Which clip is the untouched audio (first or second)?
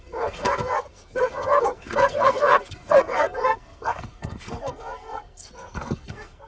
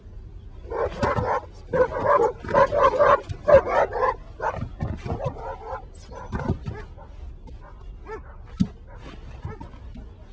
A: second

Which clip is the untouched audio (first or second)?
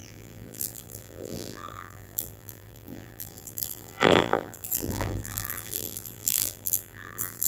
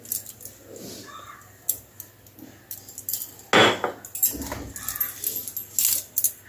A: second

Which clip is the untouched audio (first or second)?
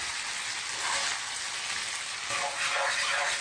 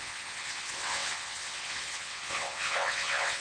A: first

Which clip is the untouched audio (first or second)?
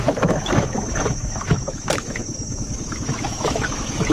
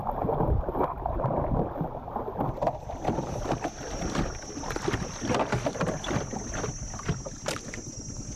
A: second